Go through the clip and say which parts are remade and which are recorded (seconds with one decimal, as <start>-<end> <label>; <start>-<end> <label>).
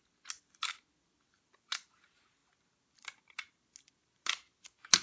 0.0-5.0 recorded